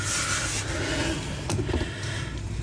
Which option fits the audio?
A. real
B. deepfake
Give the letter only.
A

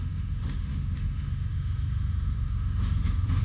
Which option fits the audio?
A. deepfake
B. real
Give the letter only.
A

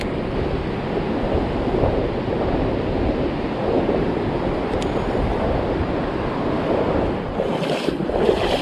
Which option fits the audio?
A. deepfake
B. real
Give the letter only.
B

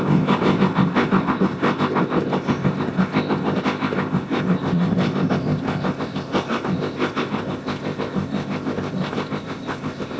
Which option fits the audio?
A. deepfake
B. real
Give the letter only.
A